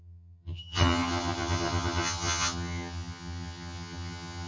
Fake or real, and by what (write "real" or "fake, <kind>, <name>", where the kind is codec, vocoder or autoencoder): fake, vocoder, HiFi-GAN